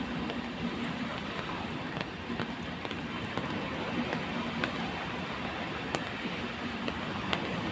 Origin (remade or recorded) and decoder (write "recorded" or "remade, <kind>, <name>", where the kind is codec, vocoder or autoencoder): recorded